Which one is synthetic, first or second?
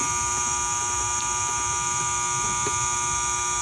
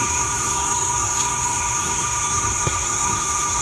second